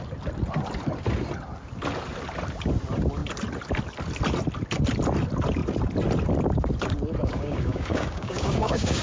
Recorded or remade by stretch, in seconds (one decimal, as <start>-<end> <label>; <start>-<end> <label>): 0.0-7.2 recorded; 7.2-9.0 remade